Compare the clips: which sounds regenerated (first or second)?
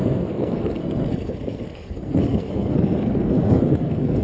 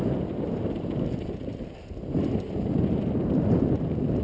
first